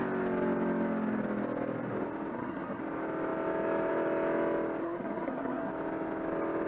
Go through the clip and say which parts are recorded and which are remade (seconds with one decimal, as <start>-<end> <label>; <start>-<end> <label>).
0.0-2.3 recorded; 2.3-2.8 remade; 2.8-4.8 recorded; 4.8-5.7 remade; 5.7-6.7 recorded